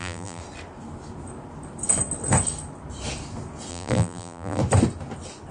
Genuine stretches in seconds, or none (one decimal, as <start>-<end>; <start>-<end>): 0.4-3.7; 4.6-5.5